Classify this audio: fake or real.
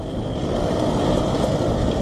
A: real